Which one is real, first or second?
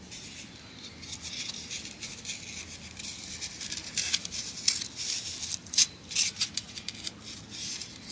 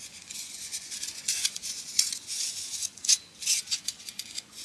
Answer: first